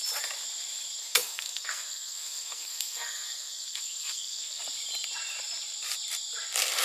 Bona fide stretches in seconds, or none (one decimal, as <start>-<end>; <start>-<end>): 0.0-1.0; 4.6-6.8